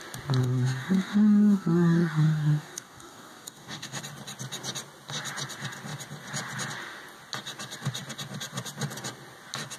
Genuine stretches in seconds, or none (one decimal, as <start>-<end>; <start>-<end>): 0.0-0.4; 4.0-9.8